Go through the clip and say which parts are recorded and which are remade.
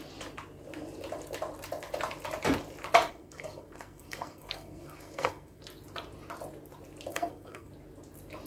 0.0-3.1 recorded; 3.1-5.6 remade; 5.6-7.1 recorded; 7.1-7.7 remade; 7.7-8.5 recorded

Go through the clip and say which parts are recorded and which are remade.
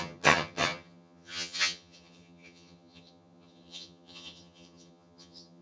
0.0-5.6 remade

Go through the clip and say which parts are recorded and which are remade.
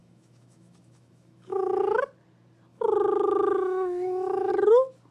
0.0-1.8 remade; 1.8-2.7 recorded; 2.7-4.5 remade; 4.5-5.1 recorded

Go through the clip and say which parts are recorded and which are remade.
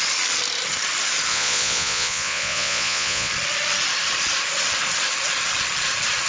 0.0-1.3 recorded; 1.3-3.3 remade; 3.3-6.3 recorded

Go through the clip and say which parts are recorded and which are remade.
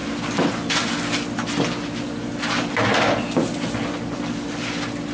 0.0-0.9 remade; 0.9-5.1 recorded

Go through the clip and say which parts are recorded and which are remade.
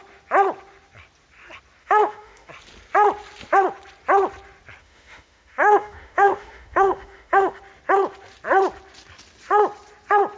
0.0-1.8 recorded; 1.8-2.5 remade; 2.5-4.8 recorded; 4.8-7.6 remade; 7.6-10.4 recorded